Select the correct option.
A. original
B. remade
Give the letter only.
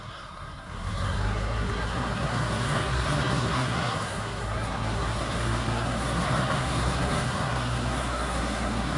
B